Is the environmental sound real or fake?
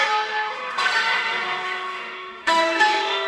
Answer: fake